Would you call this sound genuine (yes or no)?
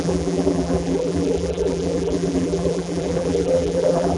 no